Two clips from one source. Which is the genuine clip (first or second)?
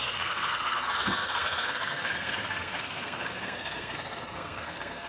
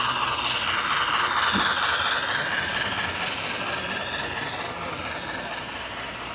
second